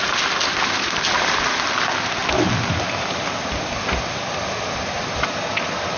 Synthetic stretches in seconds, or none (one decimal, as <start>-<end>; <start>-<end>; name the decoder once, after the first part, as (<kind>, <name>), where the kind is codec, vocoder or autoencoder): none